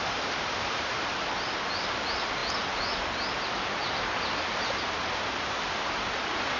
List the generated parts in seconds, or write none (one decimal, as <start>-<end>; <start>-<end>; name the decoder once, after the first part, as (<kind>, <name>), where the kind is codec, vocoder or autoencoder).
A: 0.0-6.6 (vocoder, BigVGAN v2)